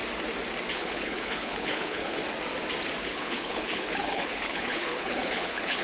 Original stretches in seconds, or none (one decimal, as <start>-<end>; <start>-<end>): 0.0-0.7; 2.2-3.0